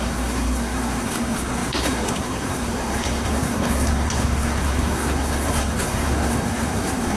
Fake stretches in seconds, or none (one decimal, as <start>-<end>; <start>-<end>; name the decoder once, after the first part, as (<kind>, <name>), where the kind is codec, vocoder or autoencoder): 0.0-7.2 (codec, SNAC)